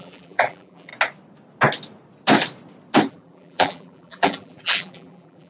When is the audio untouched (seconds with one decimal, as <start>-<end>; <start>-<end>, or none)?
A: 0.9-3.1

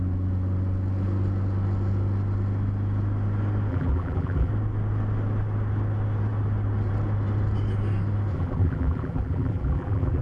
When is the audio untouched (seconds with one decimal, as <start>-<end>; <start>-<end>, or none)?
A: 0.0-3.7; 4.5-8.3

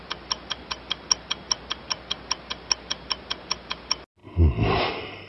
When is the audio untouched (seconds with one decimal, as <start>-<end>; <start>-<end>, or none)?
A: 0.0-5.3